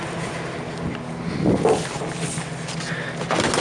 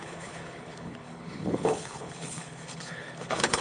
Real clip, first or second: first